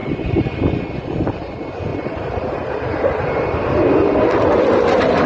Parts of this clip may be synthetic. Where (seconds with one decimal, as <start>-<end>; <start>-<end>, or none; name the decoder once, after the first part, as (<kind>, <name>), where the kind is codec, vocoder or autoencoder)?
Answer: 0.0-0.6 (vocoder, BigVGAN v2); 1.9-3.6